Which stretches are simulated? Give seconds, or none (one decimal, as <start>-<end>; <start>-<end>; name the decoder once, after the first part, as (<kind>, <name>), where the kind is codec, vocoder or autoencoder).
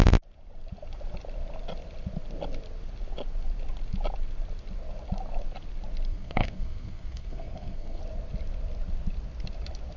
6.1-8.0 (codec, SNAC)